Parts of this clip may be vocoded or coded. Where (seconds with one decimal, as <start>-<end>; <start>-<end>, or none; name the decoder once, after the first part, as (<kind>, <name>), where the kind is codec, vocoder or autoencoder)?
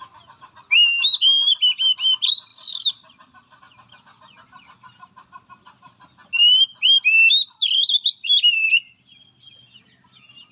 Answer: 2.5-3.6 (vocoder, BigVGAN v2)